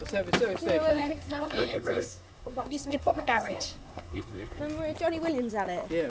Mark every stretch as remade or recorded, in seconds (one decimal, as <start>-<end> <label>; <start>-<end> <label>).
0.0-0.9 recorded; 0.9-4.6 remade; 4.6-6.1 recorded